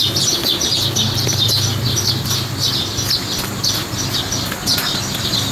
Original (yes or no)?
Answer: yes